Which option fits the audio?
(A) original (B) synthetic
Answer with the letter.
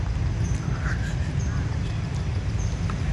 A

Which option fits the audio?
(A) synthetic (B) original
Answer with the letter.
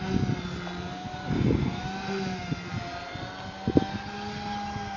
B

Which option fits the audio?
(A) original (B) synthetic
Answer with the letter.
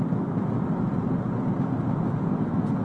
A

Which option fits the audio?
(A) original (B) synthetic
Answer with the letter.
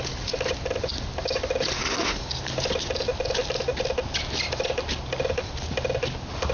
A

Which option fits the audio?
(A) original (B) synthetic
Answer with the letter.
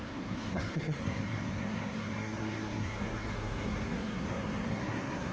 B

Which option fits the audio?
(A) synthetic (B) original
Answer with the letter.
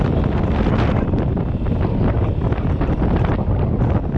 B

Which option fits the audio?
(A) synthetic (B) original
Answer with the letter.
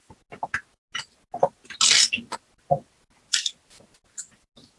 B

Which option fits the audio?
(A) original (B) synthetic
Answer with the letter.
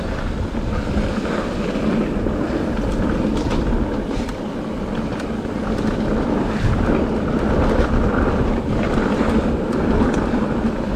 A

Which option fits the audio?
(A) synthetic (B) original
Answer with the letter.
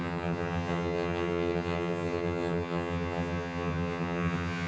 A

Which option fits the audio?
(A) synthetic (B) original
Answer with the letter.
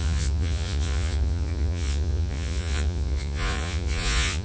A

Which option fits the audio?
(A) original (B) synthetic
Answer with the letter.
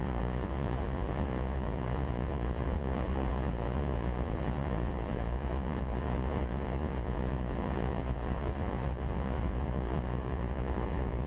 B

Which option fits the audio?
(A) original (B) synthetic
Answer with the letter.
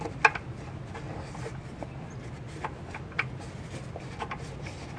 A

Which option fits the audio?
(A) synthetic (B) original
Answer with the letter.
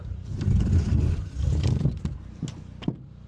B